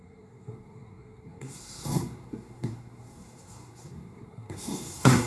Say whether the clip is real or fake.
fake